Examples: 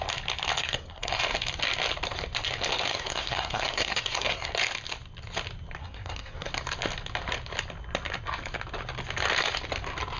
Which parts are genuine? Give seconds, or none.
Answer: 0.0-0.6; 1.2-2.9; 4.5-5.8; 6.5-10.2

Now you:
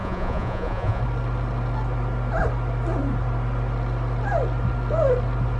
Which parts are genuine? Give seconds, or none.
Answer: 1.0-5.6

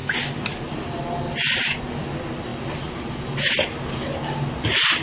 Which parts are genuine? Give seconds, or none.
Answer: 0.0-5.0